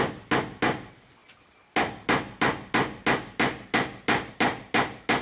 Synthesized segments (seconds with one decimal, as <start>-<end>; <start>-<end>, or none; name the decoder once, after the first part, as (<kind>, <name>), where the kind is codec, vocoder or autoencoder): none